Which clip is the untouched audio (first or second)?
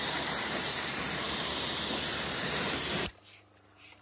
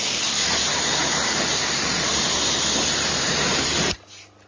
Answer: second